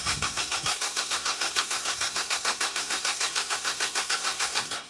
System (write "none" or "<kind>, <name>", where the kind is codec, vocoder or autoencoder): codec, SNAC